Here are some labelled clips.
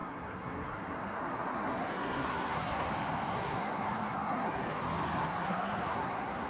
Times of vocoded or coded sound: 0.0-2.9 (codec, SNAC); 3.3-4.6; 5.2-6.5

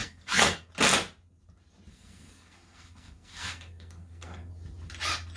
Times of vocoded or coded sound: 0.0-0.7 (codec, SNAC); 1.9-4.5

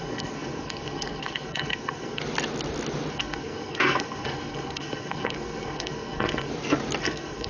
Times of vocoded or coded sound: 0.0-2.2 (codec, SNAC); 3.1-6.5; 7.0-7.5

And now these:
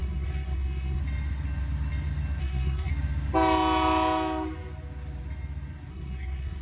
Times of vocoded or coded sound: 0.0-1.0 (codec, SNAC); 2.4-2.9; 5.9-6.6

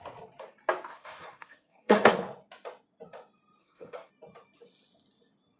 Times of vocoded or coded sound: 0.9-2.1 (codec, SNAC); 3.6-4.1

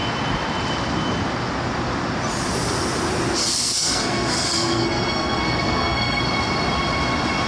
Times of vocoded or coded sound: 3.4-6.2 (codec, SNAC)

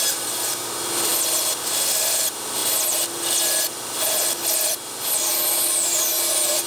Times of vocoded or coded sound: none

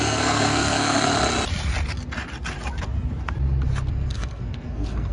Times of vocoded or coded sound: 0.0-1.1 (codec, SNAC); 3.9-5.1